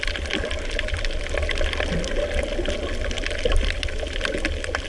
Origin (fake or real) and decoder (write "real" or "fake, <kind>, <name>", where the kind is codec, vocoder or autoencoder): real